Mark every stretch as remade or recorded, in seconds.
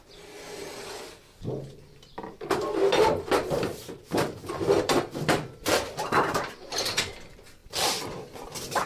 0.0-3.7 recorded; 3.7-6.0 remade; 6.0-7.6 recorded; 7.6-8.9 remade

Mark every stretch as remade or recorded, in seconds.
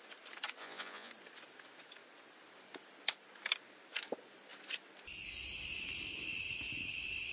0.0-0.6 recorded; 0.6-1.1 remade; 1.1-7.3 recorded